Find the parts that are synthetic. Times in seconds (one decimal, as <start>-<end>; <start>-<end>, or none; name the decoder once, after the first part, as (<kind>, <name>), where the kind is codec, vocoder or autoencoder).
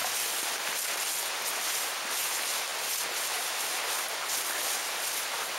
none